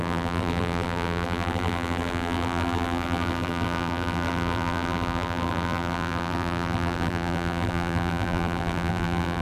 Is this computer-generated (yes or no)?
yes